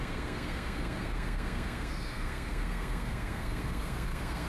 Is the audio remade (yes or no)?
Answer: yes